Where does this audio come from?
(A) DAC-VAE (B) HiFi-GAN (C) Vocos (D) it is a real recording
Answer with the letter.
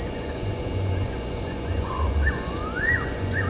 C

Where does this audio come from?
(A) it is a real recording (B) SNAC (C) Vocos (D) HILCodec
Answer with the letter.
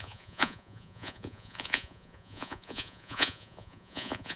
C